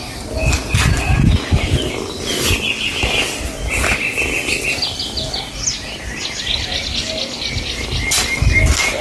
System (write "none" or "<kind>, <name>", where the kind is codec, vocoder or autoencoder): none